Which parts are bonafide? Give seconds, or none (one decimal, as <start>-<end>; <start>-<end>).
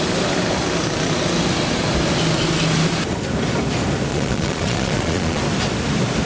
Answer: 0.0-4.1; 5.4-6.3